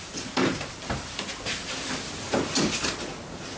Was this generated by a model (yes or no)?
no